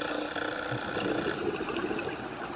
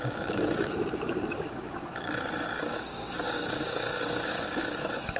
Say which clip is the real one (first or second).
first